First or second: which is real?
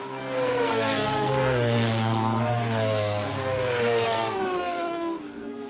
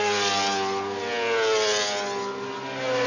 second